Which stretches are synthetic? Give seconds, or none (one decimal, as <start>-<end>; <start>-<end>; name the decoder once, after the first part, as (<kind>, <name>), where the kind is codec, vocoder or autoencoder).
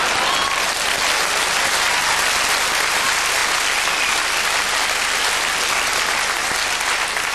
none